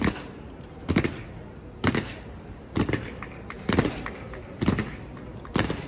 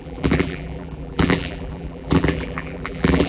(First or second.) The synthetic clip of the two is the second